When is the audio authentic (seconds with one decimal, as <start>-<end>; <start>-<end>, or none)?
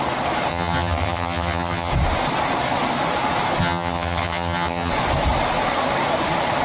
0.0-0.5; 1.9-3.6; 4.9-6.6